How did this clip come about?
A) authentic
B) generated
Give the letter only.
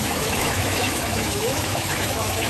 B